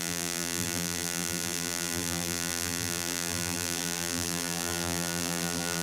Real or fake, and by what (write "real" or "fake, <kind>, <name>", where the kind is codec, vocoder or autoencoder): fake, vocoder, BigVGAN v2